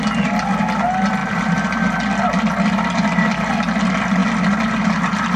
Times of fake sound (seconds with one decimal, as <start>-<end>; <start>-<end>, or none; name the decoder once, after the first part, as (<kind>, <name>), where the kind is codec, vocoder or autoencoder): 1.2-1.9 (vocoder, BigVGAN v2)